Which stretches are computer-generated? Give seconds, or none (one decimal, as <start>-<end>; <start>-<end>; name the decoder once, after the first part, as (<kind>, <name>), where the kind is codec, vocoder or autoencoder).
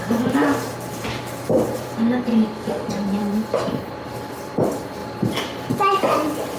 0.0-2.3 (vocoder, BigVGAN v2); 2.9-6.6